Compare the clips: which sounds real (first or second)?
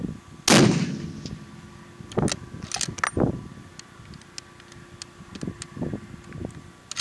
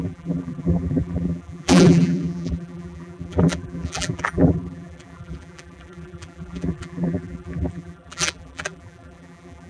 first